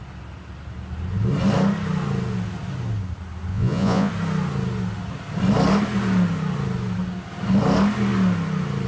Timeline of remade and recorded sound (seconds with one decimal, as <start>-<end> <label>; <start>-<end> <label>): 0.0-3.5 recorded; 3.5-4.1 remade; 4.1-8.9 recorded